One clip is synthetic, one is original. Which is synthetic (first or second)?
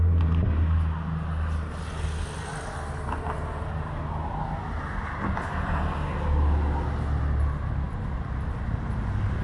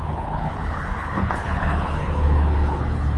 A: second